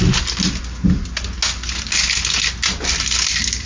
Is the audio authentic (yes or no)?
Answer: yes